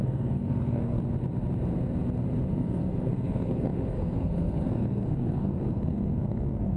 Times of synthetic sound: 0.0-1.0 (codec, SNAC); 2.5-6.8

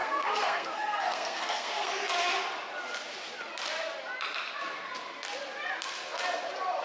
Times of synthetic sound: 0.0-1.9 (codec, SNAC)